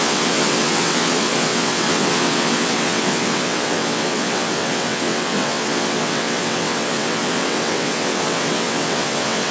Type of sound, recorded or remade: remade